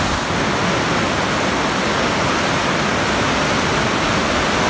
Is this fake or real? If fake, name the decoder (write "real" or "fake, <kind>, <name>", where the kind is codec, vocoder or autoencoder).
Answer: real